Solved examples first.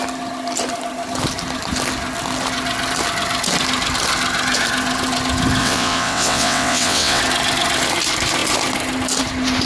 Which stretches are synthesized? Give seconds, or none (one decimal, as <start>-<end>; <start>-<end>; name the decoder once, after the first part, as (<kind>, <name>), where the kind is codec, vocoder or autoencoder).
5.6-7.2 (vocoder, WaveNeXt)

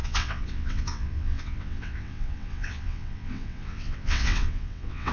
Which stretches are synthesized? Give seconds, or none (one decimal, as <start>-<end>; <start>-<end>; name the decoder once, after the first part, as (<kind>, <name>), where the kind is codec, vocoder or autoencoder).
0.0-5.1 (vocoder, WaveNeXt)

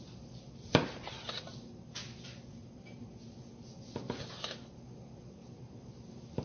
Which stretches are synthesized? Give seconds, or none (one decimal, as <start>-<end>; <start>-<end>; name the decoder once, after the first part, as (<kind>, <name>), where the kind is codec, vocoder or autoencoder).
none